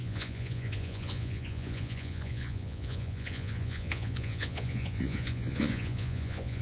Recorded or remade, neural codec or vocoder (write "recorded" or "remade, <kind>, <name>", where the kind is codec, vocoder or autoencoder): remade, vocoder, Vocos